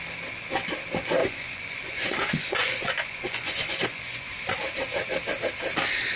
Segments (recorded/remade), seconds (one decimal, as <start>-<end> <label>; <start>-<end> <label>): 0.0-1.2 recorded; 1.2-4.4 remade; 4.4-6.2 recorded